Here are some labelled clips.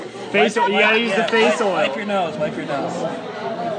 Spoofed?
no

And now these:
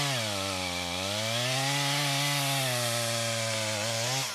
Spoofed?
no